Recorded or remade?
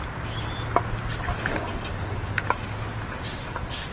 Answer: recorded